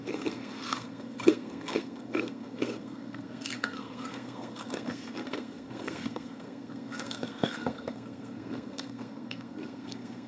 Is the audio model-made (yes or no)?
yes